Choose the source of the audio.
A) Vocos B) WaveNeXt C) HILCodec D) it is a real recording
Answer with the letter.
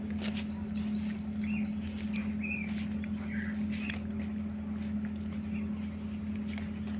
D